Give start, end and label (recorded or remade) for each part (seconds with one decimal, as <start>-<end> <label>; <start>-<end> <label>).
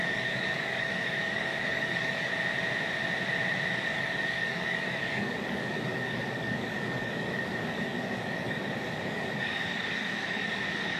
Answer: 0.0-2.3 remade; 2.3-3.7 recorded; 3.7-11.0 remade